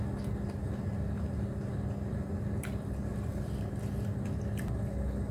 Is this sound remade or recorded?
recorded